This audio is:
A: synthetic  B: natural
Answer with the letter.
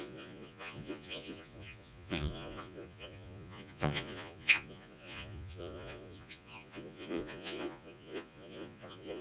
A